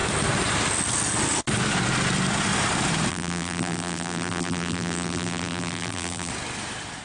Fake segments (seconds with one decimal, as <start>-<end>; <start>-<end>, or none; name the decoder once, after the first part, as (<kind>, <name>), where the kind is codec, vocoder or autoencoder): 3.1-6.3 (vocoder, BigVGAN v2)